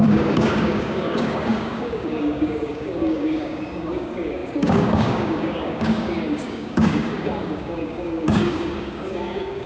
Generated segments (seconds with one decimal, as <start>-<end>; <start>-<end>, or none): 0.0-9.7